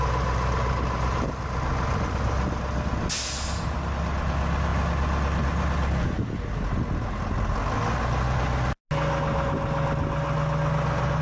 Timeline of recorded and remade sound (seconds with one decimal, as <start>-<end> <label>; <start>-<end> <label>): 0.0-11.2 recorded